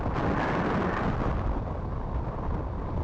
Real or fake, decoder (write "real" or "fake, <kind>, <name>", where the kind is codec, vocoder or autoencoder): real